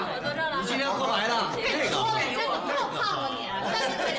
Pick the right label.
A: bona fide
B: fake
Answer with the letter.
A